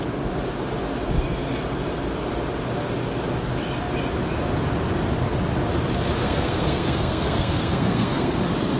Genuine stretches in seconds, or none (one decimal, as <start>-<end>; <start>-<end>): 0.0-6.2; 8.4-8.8